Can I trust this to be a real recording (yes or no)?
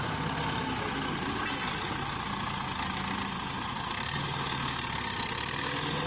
yes